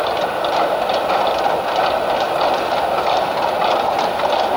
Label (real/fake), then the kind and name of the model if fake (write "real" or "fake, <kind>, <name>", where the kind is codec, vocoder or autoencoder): real